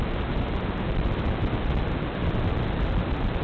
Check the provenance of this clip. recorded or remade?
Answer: recorded